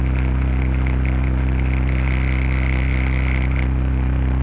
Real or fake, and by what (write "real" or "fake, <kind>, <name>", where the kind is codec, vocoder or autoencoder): real